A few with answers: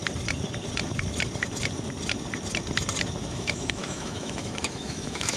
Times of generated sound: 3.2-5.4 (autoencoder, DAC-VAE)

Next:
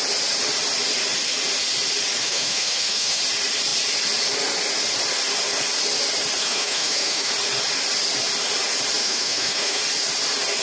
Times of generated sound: 2.2-3.2 (autoencoder, DAC-VAE); 6.4-7.3; 9.0-9.8

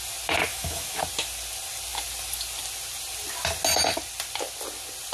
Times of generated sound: 0.5-1.0 (autoencoder, DAC-VAE)

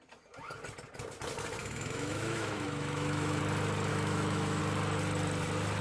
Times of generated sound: 1.6-3.4 (autoencoder, DAC-VAE); 3.9-4.6

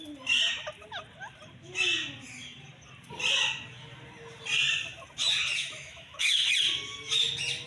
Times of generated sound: 5.6-6.5 (autoencoder, DAC-VAE)

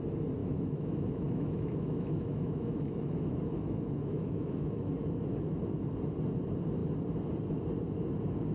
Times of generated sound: 0.4-4.9 (autoencoder, DAC-VAE)

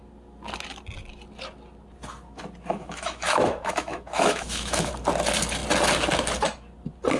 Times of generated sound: 2.7-4.9 (autoencoder, DAC-VAE)